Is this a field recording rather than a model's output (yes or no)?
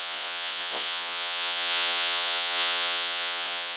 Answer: no